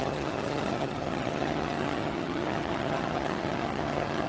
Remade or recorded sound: remade